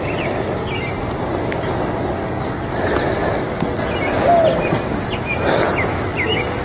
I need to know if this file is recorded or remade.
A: recorded